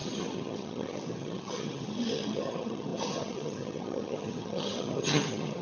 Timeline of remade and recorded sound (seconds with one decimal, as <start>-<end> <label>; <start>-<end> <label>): 0.0-5.6 remade